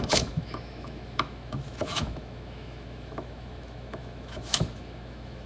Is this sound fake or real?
fake